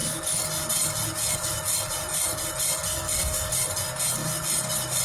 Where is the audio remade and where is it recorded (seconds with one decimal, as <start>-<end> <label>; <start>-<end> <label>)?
0.0-2.9 recorded; 2.9-3.5 remade; 3.5-5.0 recorded